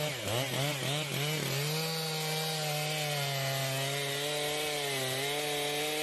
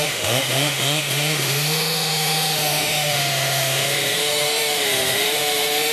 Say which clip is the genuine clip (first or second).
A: first